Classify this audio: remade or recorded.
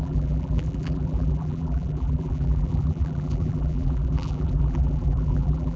remade